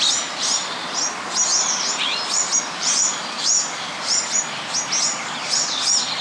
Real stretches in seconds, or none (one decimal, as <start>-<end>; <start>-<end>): 0.0-6.2